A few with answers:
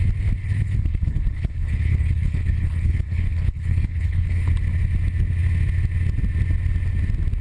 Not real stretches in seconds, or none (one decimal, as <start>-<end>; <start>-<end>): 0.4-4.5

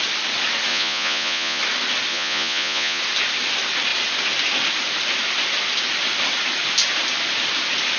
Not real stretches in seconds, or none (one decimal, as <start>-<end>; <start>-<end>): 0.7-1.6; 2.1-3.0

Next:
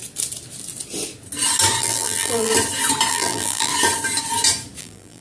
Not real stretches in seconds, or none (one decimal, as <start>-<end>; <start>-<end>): 1.8-2.5; 3.1-3.7; 4.8-5.2

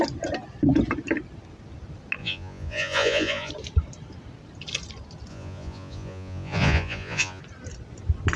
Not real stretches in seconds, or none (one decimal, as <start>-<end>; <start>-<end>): 2.2-3.5; 5.3-7.4

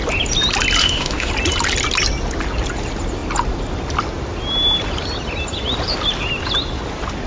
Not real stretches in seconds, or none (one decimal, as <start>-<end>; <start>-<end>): 0.8-1.3

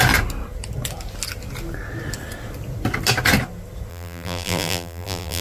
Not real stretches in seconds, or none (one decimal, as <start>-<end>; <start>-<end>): 3.9-5.4

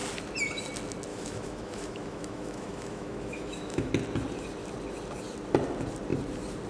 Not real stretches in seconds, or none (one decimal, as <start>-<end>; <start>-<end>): 1.1-3.9